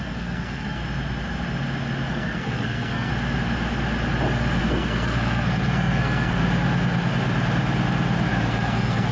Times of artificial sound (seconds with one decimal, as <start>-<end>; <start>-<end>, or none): 0.0-0.8; 2.1-3.1; 4.6-6.4; 8.3-9.1